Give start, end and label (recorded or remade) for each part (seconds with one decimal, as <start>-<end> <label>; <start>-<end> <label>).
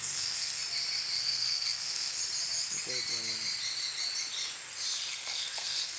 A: 0.0-0.6 remade; 0.6-1.2 recorded; 1.2-2.2 remade; 2.2-5.1 recorded; 5.1-6.0 remade